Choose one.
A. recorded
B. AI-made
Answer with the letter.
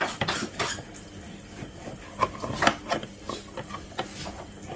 A